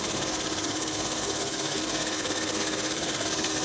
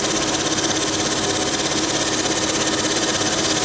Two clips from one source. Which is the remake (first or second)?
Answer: first